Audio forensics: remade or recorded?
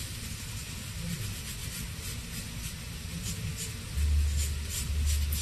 recorded